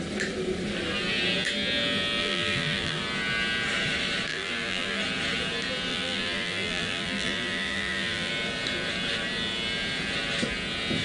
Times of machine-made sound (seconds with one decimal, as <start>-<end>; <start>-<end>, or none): 2.2-3.0; 4.3-5.0; 5.9-8.3